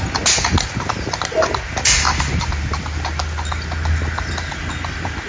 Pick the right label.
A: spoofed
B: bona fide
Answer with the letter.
B